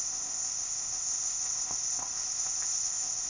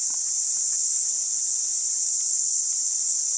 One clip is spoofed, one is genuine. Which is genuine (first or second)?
second